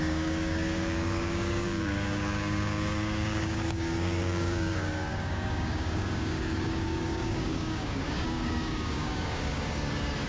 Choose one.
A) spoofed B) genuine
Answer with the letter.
A